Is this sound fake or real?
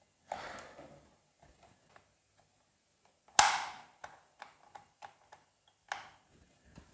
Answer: real